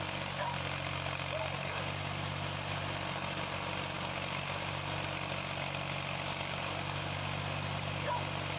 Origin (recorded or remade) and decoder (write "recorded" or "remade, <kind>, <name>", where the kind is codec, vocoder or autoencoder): recorded